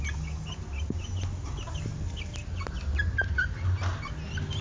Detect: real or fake real